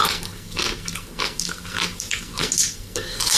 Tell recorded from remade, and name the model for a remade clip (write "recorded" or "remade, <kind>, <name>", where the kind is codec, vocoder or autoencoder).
remade, codec, SNAC